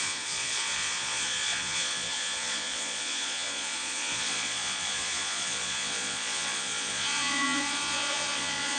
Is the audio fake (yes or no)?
yes